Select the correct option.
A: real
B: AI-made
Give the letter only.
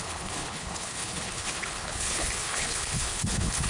B